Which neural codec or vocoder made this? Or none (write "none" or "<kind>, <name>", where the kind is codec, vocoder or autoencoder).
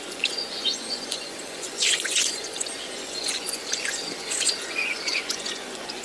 vocoder, Vocos